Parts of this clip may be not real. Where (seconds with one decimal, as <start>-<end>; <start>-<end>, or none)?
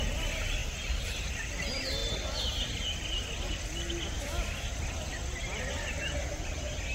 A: none